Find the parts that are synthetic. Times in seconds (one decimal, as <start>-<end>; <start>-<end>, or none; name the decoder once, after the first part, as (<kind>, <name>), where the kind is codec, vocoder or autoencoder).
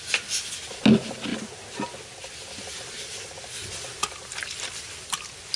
none